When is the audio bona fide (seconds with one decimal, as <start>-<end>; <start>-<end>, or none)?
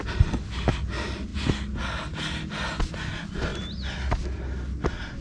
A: 0.0-5.2